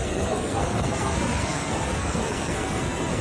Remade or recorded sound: remade